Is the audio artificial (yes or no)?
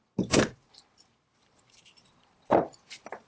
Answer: yes